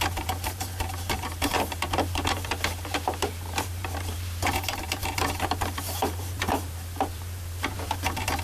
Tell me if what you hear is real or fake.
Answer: fake